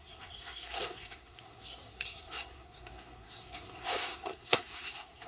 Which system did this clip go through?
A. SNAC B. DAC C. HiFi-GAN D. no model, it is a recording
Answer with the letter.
A